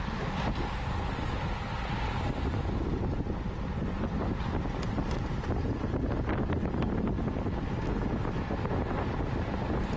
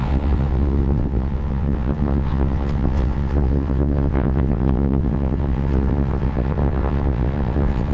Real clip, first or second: first